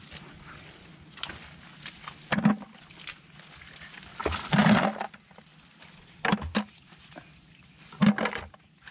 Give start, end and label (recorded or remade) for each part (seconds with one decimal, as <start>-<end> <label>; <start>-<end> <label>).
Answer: 0.0-8.9 recorded